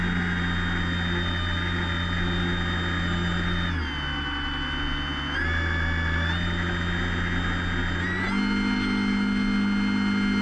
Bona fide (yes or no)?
yes